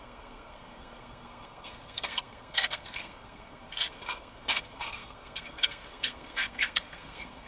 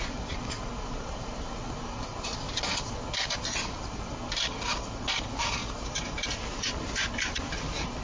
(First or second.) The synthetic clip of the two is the first